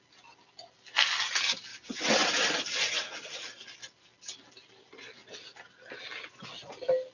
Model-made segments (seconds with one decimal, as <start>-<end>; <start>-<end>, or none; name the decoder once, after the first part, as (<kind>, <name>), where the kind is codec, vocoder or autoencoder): 1.7-2.3 (vocoder, WaveNeXt)